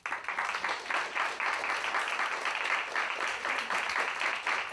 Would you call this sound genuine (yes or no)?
yes